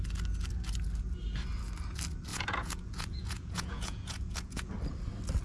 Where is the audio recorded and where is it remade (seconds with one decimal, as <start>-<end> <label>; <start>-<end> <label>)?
0.0-2.3 recorded; 2.3-4.7 remade; 4.7-5.4 recorded